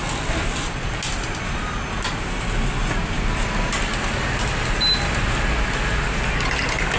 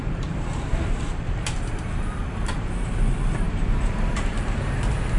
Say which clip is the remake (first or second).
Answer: second